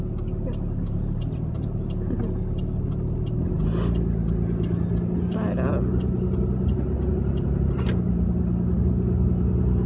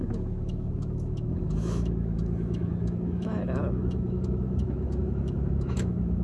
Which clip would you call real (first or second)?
first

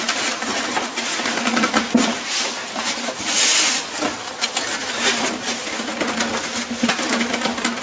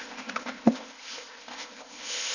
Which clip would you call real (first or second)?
first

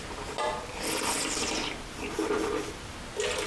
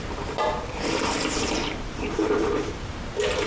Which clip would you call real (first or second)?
first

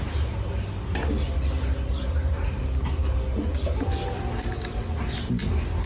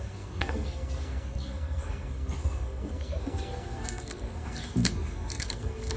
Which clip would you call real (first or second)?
first